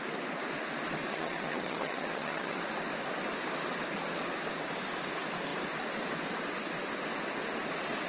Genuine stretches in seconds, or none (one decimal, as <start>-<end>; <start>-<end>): 0.0-1.1; 2.6-8.1